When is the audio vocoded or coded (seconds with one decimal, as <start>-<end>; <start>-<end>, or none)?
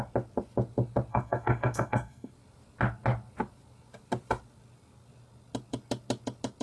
1.1-2.3